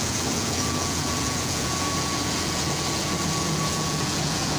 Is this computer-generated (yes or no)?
yes